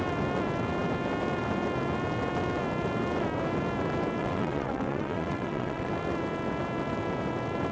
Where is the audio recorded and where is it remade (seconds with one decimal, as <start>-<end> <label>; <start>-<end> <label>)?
0.0-4.2 recorded; 4.2-5.9 remade; 5.9-7.7 recorded